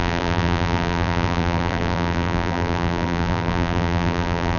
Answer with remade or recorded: remade